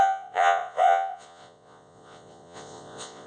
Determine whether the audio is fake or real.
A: fake